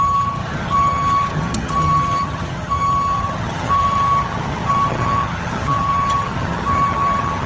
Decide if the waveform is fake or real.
fake